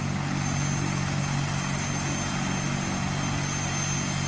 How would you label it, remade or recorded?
recorded